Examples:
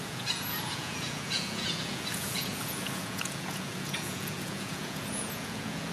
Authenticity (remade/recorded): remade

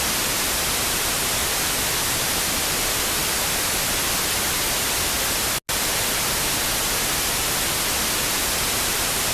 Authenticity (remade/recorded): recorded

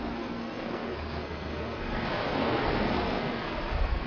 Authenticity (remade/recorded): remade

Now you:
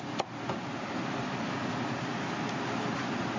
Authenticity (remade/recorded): recorded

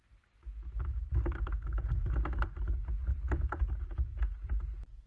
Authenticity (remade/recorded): recorded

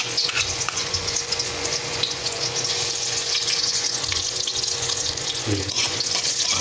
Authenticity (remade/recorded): remade